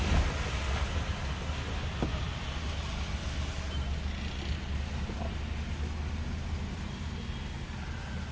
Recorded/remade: recorded